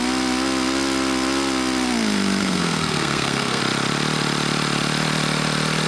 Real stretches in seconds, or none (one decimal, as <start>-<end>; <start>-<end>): 0.0-2.4; 3.6-5.9